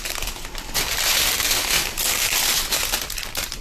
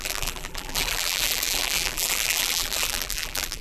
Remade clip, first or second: second